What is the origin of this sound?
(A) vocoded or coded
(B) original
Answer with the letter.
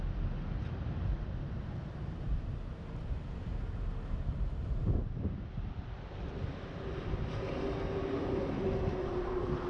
B